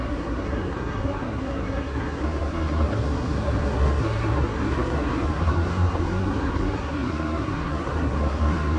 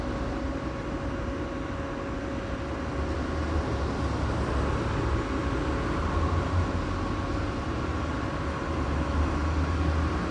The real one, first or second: second